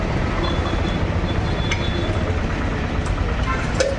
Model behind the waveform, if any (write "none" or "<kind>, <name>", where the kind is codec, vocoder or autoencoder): none